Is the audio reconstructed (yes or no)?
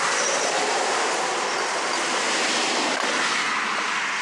no